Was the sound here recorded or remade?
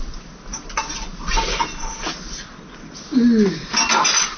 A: recorded